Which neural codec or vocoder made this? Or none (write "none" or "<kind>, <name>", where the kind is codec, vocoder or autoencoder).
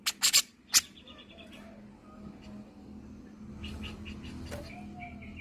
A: none